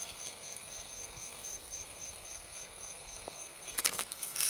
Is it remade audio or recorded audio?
remade